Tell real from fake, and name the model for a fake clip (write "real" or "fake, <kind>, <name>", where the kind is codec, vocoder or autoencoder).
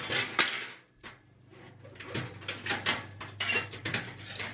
real